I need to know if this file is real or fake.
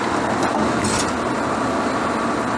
real